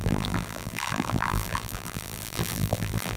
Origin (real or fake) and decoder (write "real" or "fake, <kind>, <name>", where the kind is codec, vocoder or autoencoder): fake, vocoder, BigVGAN v2